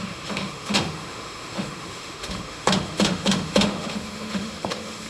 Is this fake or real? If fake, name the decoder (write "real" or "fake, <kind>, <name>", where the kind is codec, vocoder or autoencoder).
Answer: fake, autoencoder, DAC-VAE